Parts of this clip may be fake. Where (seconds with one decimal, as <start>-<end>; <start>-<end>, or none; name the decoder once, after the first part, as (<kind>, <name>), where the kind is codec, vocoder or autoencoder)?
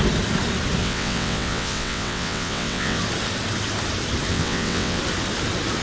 0.8-3.0 (vocoder, WaveNeXt); 4.3-5.0